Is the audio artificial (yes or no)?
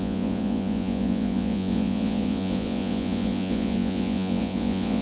yes